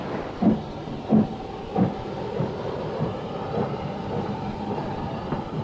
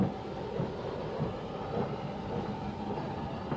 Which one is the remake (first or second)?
first